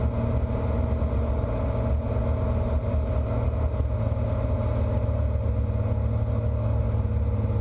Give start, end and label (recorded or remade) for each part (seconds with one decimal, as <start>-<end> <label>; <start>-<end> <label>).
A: 0.0-6.0 recorded; 6.0-6.8 remade; 6.8-7.6 recorded